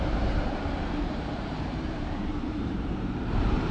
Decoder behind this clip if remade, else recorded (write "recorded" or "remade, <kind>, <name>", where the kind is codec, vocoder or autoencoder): remade, vocoder, BigVGAN v2